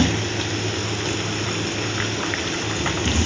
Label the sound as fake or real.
real